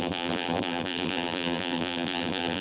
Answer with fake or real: fake